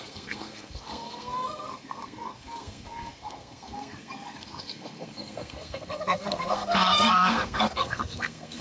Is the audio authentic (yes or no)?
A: no